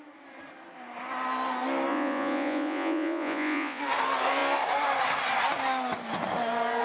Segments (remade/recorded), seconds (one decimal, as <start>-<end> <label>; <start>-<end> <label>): 0.0-1.9 recorded; 1.9-3.8 remade; 3.8-6.8 recorded